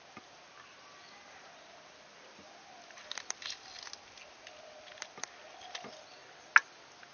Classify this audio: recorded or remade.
recorded